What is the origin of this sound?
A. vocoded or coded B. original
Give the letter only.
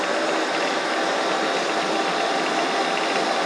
B